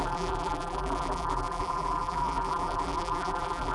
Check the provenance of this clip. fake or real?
fake